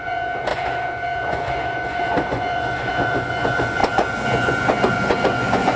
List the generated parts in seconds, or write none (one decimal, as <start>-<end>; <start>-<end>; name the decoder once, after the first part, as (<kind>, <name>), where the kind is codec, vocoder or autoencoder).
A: 0.0-5.8 (vocoder, Vocos)